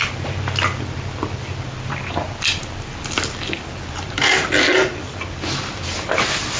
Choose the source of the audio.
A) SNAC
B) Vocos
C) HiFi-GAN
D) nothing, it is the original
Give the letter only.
D